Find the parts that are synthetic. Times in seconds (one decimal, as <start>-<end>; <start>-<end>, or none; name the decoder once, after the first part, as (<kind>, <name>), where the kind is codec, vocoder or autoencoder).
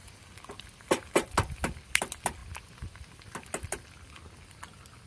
none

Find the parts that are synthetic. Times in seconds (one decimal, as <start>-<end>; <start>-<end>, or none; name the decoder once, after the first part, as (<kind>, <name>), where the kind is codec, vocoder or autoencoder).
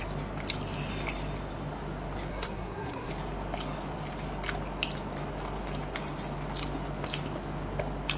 2.3-3.1 (codec, SNAC)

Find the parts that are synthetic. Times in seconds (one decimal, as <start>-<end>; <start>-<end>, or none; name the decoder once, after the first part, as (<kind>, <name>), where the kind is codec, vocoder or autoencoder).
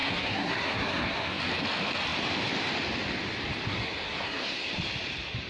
0.0-1.4 (codec, SNAC); 3.7-4.7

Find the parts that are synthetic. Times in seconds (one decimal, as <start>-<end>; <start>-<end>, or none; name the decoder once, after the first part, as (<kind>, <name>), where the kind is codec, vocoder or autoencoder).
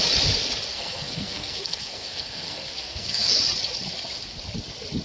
0.7-3.4 (codec, SNAC)